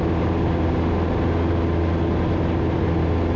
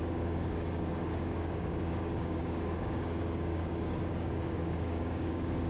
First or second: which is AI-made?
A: second